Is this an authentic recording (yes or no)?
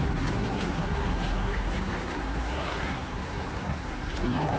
no